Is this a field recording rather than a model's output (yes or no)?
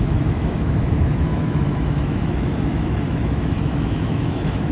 no